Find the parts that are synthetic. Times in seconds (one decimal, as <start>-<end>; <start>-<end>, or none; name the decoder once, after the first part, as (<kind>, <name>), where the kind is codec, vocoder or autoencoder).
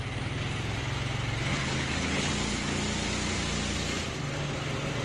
1.5-2.3 (codec, HILCodec)